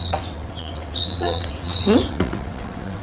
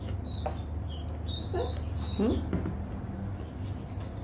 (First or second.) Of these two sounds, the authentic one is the second